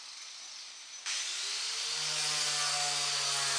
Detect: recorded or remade recorded